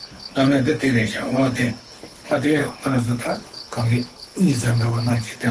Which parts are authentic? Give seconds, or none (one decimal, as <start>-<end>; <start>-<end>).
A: none